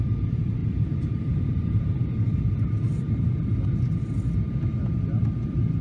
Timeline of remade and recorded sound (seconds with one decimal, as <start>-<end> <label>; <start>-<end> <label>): 0.0-0.6 recorded; 0.6-1.9 remade; 1.9-2.9 recorded; 2.9-3.5 remade; 3.5-5.8 recorded